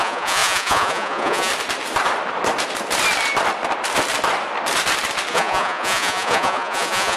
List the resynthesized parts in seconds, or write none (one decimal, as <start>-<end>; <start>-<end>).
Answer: 0.0-1.5; 5.3-7.2